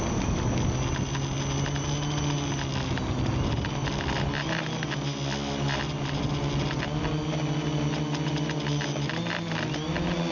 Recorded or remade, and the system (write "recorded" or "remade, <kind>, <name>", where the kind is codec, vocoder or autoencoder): recorded